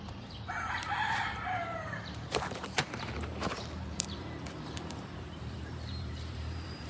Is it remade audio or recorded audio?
remade